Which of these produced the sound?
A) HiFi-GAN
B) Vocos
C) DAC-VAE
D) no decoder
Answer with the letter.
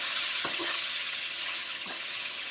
A